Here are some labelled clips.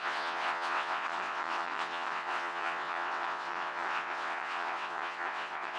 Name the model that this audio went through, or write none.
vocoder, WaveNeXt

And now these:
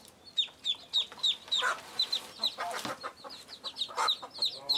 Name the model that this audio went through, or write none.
none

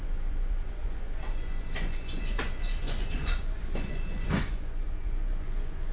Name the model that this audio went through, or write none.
vocoder, Vocos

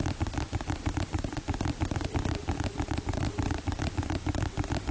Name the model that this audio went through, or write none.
none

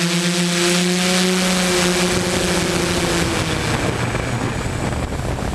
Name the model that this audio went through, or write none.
none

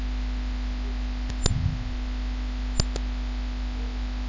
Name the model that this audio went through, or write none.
none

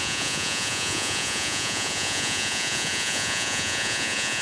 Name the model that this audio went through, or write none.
vocoder, Vocos